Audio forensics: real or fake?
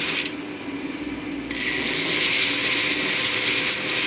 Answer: real